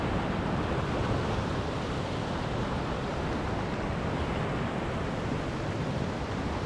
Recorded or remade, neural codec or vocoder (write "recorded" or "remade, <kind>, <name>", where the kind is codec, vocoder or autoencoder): remade, vocoder, BigVGAN v2